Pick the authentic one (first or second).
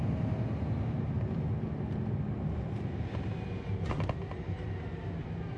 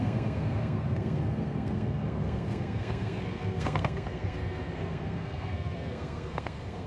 first